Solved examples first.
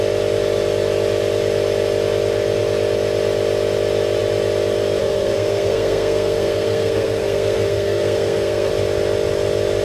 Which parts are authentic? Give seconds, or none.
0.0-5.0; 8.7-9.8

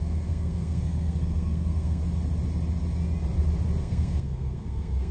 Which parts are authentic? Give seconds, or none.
2.0-3.8

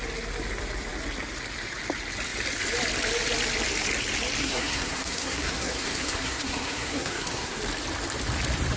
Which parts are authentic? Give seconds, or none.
0.0-4.4; 7.6-8.8

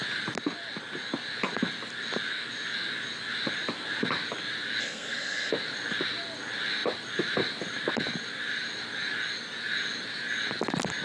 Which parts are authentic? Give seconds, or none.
0.0-4.8; 5.5-11.0

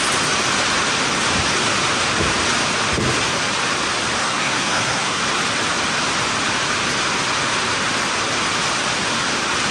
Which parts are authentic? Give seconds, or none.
0.0-4.2; 5.2-9.7

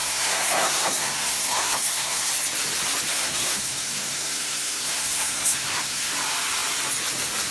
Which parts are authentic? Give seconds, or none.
2.3-3.1; 6.1-7.5

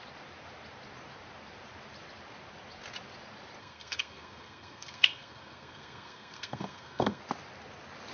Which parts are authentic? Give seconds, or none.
0.0-3.6; 7.2-8.1

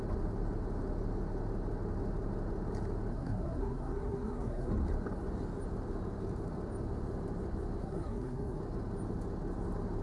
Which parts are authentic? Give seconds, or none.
0.0-3.1; 4.7-7.8; 8.6-10.0